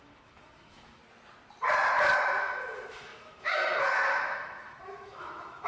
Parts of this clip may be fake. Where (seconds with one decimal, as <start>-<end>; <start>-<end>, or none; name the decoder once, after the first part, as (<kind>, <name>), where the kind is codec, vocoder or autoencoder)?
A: 0.0-1.0 (autoencoder, DAC-VAE); 2.4-5.7